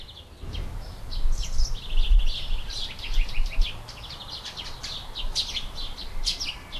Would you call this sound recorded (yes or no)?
yes